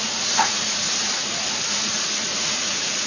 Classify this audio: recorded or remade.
remade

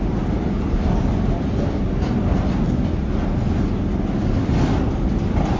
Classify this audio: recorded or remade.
recorded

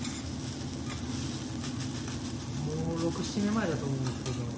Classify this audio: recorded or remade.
recorded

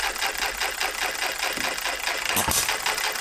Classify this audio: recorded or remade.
recorded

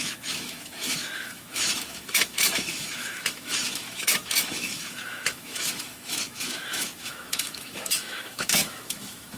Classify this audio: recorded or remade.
remade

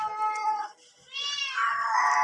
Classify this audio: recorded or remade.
recorded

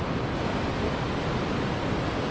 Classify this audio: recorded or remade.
recorded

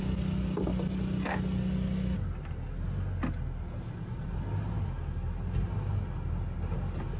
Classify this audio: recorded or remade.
recorded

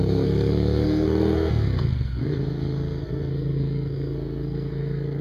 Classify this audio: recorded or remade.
remade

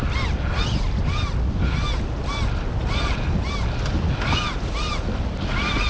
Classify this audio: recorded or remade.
recorded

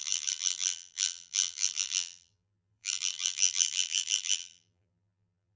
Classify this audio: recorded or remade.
remade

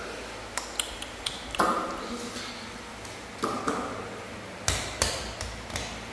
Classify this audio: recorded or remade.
recorded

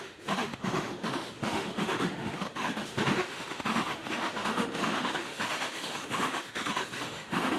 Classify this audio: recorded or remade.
remade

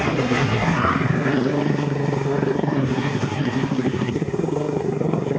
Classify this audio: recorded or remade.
remade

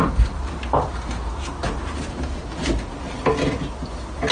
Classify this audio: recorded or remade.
recorded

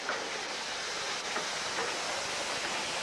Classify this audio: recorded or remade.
remade